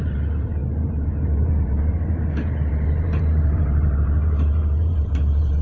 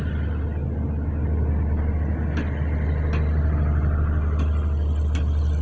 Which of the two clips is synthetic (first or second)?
first